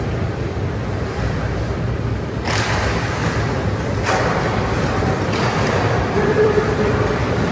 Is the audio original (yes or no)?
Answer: no